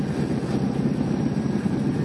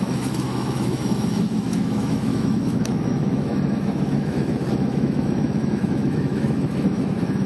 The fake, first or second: second